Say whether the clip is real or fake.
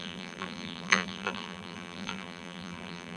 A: fake